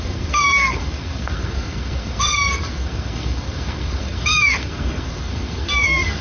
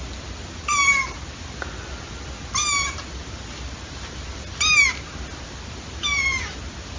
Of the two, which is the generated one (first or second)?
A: first